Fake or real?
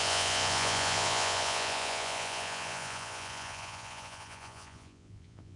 fake